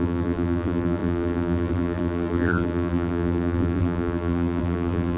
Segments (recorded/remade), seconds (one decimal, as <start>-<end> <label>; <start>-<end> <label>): 0.0-5.2 remade